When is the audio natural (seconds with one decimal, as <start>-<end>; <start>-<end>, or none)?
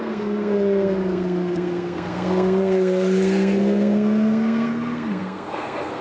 none